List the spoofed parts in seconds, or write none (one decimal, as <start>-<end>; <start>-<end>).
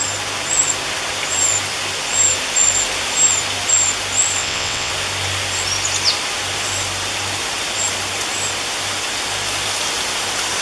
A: 4.4-4.9